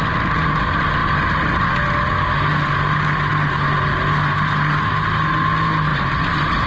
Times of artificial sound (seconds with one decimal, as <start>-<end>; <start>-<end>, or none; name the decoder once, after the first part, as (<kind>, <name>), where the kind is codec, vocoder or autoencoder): none